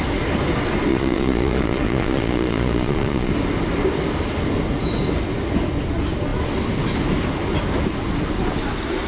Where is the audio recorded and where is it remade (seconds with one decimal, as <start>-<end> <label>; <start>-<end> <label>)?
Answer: 0.0-0.9 recorded; 0.9-3.3 remade; 3.3-9.1 recorded